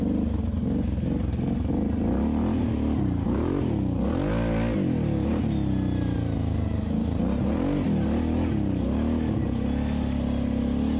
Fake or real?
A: real